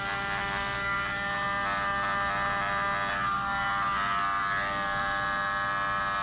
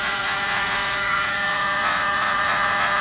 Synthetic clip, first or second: second